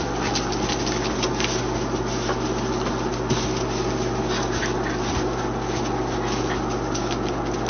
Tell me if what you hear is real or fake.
real